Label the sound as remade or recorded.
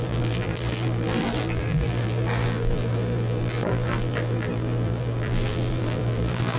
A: remade